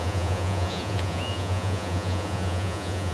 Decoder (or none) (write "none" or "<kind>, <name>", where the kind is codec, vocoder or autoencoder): vocoder, Vocos